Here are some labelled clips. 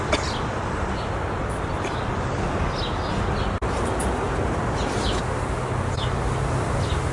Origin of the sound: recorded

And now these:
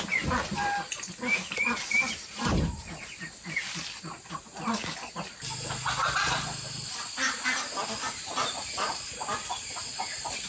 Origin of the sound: recorded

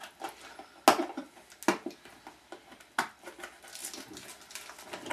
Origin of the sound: recorded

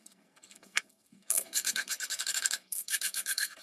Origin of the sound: remade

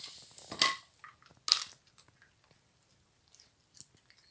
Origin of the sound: recorded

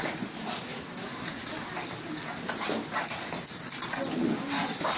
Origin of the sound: recorded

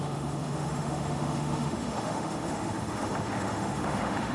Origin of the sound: remade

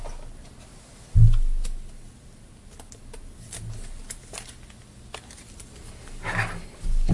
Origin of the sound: recorded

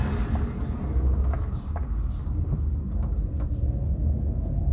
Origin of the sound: recorded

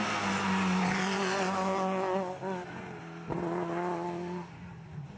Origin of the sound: recorded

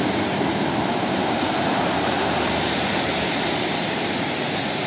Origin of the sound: remade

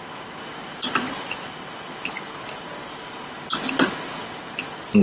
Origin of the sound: recorded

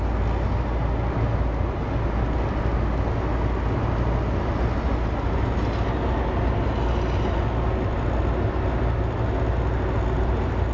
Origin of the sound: recorded